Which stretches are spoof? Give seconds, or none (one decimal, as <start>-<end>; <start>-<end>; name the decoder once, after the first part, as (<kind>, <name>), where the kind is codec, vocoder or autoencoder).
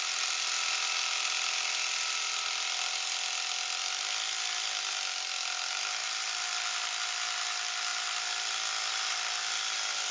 none